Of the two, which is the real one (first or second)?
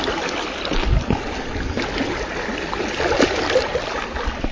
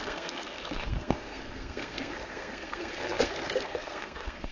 first